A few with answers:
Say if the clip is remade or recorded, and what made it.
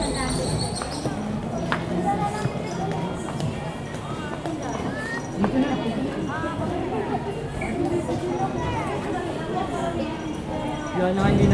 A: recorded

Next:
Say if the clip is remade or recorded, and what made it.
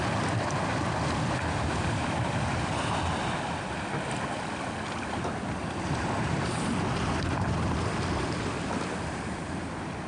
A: recorded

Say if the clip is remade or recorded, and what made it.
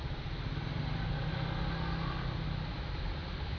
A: recorded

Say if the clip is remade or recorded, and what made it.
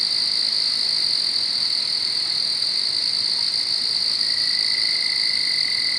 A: recorded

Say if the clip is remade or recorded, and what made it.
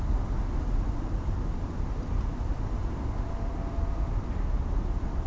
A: recorded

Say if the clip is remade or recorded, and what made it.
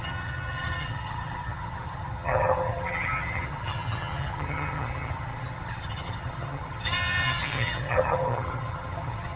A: remade, vocoder, HiFi-GAN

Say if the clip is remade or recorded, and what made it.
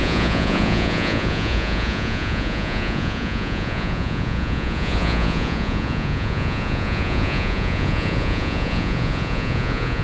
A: remade, vocoder, Vocos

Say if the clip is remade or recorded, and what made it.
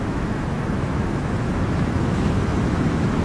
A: remade, autoencoder, DAC-VAE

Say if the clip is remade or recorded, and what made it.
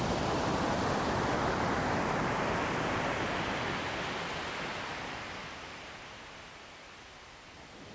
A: recorded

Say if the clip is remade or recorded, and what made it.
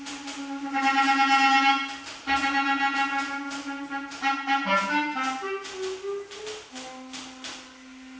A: recorded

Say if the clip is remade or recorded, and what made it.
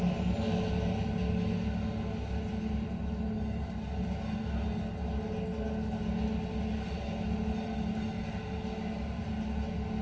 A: recorded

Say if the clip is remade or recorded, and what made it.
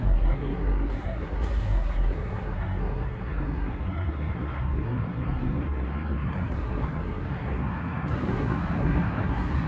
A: remade, codec, SNAC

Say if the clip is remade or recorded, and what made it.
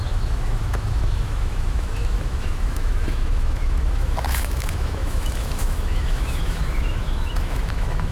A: remade, autoencoder, DAC-VAE